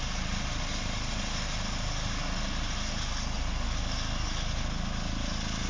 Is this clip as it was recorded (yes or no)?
yes